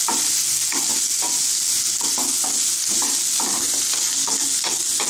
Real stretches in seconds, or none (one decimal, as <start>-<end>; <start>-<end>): 0.0-5.1